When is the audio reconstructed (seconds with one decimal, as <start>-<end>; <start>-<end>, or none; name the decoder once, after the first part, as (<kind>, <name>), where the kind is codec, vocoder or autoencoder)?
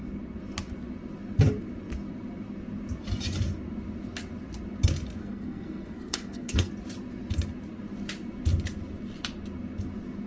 5.2-6.7 (codec, SNAC)